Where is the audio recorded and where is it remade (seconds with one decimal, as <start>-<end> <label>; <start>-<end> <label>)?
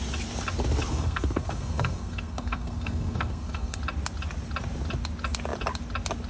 0.0-0.9 recorded; 0.9-3.8 remade; 3.8-6.3 recorded